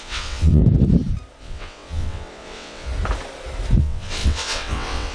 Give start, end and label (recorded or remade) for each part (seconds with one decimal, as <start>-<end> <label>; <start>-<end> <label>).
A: 0.0-0.6 remade; 0.6-1.4 recorded; 1.4-2.9 remade; 2.9-3.8 recorded; 3.8-5.1 remade